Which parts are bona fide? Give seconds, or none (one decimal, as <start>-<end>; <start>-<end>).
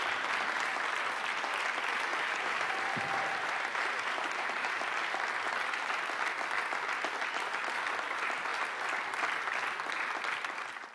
0.0-2.1; 4.7-10.9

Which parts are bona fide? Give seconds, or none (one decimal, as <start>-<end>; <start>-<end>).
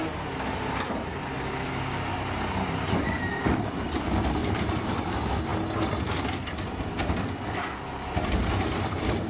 0.0-4.4; 5.0-9.3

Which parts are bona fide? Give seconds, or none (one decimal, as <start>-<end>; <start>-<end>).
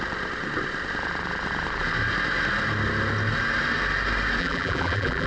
0.0-4.4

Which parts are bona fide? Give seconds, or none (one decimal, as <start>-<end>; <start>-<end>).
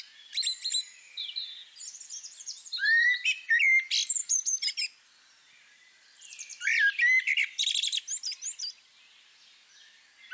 0.0-0.6; 3.5-4.2; 8.0-10.3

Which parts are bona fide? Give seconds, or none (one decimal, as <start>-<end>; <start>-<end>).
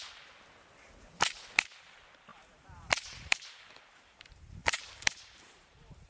0.0-2.3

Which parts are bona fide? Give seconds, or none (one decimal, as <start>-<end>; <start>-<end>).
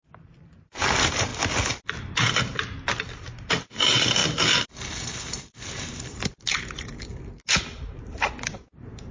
1.3-2.3; 4.2-5.4; 7.1-7.6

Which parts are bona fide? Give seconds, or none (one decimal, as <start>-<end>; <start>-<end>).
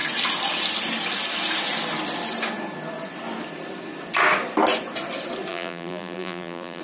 0.0-5.5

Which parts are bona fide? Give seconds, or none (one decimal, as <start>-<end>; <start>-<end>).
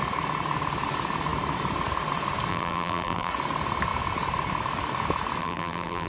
0.0-2.5; 3.3-5.4